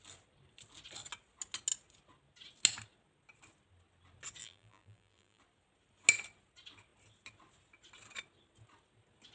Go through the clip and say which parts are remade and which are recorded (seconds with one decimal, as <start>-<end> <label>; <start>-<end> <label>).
0.0-4.4 recorded; 4.4-5.4 remade; 5.4-9.3 recorded

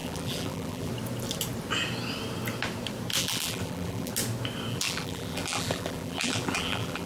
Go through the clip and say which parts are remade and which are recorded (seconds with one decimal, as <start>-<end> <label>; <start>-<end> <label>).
0.0-0.9 remade; 0.9-3.2 recorded; 3.2-4.1 remade; 4.1-4.7 recorded; 4.7-7.1 remade

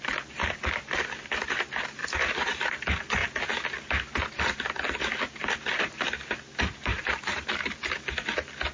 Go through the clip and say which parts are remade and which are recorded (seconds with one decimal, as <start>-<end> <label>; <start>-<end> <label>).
0.0-2.0 recorded; 2.0-2.7 remade; 2.7-6.9 recorded; 6.9-7.9 remade; 7.9-8.7 recorded

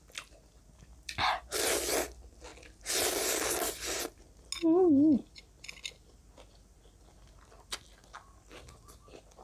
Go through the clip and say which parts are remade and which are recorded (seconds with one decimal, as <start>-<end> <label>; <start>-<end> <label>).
0.0-9.4 recorded

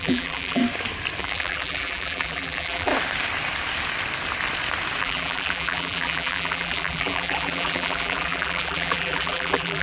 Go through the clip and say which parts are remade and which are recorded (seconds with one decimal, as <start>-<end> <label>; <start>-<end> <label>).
0.0-0.6 remade; 0.6-1.2 recorded; 1.2-2.9 remade; 2.9-5.0 recorded; 5.0-9.8 remade

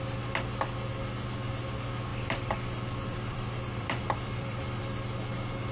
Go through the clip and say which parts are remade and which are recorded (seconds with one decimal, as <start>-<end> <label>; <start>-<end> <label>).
0.0-0.9 recorded; 0.9-1.5 remade; 1.5-2.1 recorded; 2.1-4.8 remade; 4.8-5.7 recorded

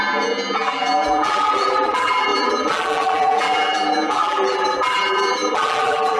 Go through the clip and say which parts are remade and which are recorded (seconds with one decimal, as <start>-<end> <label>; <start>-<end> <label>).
0.0-6.2 remade

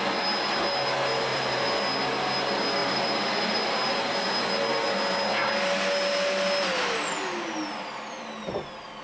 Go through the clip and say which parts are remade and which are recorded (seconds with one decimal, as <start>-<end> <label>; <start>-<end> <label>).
0.0-1.3 recorded; 1.3-1.8 remade; 1.8-9.0 recorded